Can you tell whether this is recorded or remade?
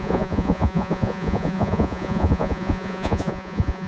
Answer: remade